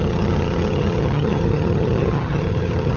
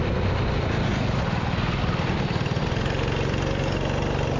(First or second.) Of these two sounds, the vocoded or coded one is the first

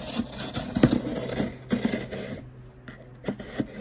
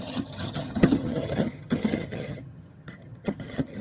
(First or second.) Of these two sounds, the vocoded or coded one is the second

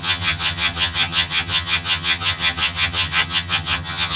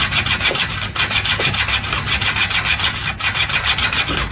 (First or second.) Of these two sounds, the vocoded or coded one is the first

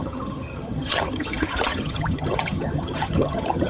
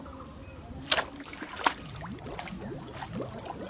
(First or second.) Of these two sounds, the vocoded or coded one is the first